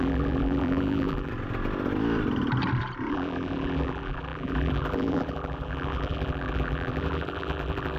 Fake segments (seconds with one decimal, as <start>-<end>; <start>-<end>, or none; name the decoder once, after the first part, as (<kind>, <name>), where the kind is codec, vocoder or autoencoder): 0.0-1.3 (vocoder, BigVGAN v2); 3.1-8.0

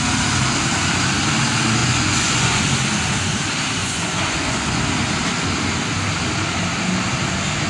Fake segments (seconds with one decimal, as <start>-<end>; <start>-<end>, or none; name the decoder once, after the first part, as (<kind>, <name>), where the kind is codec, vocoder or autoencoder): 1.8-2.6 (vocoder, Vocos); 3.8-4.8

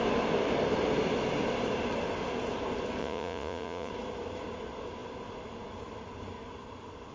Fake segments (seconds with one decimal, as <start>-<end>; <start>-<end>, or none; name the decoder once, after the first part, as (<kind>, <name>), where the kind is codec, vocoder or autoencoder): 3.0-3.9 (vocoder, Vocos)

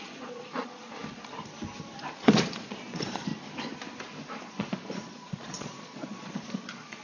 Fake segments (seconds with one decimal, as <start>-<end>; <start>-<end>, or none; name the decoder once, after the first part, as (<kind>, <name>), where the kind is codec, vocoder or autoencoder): 0.0-1.0 (vocoder, Vocos); 2.1-3.3; 4.4-7.0